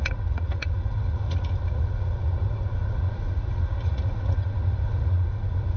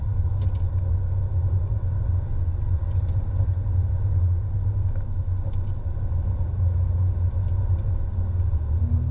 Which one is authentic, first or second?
second